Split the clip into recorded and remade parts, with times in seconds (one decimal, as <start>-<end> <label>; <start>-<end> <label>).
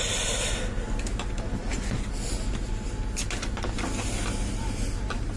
0.0-5.4 recorded